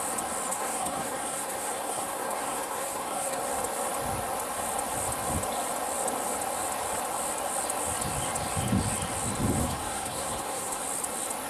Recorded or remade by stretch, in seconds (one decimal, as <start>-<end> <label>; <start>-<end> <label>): 0.0-0.5 recorded; 0.5-3.4 remade; 3.4-9.6 recorded; 9.6-10.8 remade; 10.8-11.5 recorded